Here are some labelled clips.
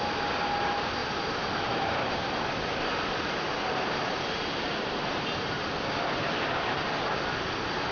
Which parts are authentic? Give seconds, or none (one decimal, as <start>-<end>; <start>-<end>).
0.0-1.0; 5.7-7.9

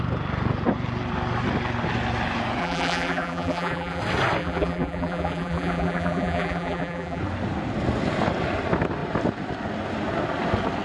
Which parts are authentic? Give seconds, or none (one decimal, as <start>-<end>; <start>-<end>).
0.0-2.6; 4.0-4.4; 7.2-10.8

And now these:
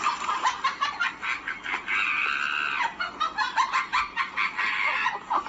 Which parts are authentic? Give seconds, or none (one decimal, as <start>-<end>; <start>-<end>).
0.0-5.5